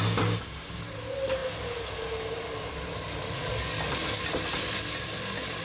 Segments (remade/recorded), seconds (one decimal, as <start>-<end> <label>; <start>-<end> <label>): 0.0-5.6 recorded